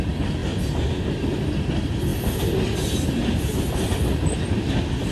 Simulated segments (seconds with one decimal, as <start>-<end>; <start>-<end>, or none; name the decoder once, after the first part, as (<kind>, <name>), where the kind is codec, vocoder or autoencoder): none